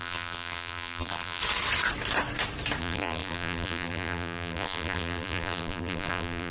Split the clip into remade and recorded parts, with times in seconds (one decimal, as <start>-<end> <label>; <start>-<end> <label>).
0.0-1.4 remade; 1.4-2.8 recorded; 2.8-6.5 remade